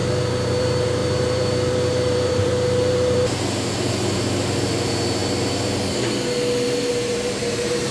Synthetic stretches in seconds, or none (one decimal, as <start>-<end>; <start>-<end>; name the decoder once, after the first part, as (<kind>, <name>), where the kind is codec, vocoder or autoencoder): 0.6-5.2 (vocoder, BigVGAN v2); 6.9-7.9